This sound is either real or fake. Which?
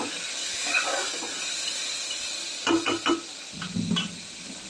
real